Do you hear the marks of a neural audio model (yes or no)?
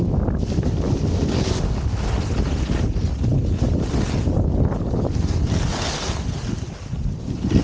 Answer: no